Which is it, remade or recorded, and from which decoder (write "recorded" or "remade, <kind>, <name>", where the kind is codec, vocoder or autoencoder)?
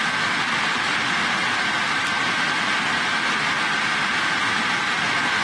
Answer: recorded